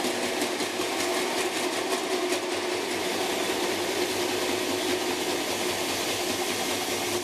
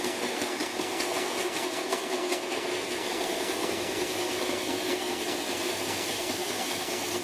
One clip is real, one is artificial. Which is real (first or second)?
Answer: first